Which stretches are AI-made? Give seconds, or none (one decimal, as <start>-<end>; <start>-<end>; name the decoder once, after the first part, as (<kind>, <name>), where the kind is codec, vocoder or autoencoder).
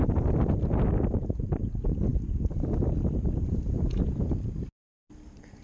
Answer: 1.2-1.7 (vocoder, BigVGAN v2)